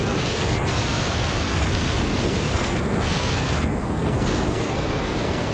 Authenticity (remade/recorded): remade